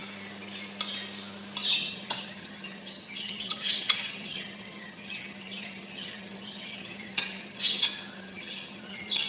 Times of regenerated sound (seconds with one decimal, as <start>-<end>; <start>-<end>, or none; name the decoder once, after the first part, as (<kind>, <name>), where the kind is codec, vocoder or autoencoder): 1.7-9.3 (vocoder, HiFi-GAN)